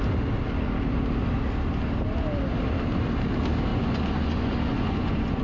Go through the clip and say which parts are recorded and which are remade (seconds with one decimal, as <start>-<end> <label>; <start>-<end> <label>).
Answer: 0.0-3.7 recorded; 3.7-5.4 remade